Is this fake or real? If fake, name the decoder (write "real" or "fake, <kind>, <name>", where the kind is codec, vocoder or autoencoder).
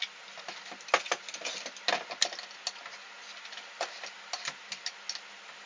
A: real